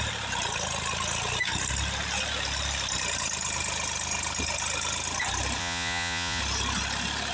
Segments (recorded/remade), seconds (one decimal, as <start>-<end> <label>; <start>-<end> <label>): 0.0-5.6 recorded; 5.6-6.4 remade; 6.4-7.3 recorded